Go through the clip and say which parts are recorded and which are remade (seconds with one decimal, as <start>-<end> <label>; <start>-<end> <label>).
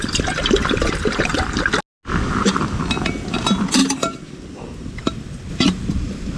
0.0-6.4 recorded